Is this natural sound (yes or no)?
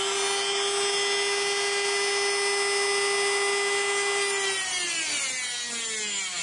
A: yes